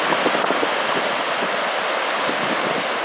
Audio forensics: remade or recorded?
recorded